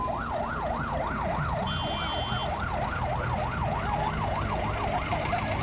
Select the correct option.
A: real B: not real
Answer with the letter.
A